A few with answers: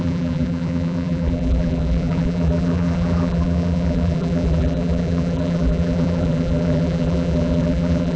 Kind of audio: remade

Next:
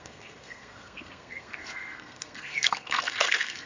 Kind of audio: remade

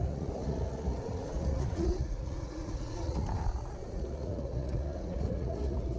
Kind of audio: remade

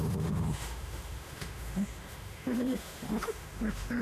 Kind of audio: remade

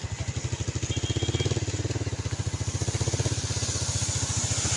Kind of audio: recorded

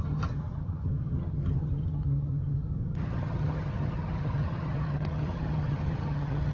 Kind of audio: remade